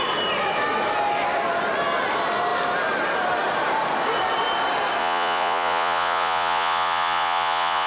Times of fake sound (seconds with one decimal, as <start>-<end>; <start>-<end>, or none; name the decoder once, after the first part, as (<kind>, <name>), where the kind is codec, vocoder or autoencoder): 5.0-7.9 (vocoder, Vocos)